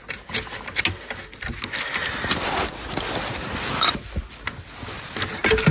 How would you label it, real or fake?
real